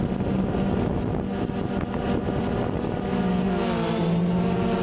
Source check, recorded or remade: recorded